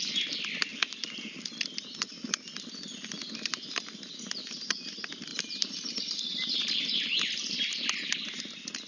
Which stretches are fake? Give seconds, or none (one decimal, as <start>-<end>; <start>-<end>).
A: 0.7-1.4; 5.3-7.3